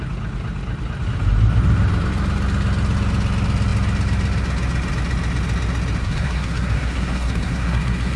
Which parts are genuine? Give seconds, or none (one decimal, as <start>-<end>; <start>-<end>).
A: 0.0-6.0